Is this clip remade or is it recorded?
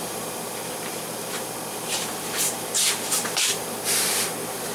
remade